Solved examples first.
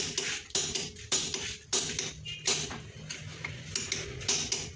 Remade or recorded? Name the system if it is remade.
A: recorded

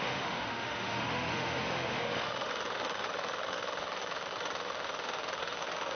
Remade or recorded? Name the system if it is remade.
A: remade, autoencoder, DAC-VAE